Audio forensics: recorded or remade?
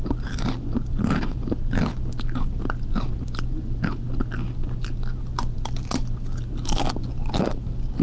recorded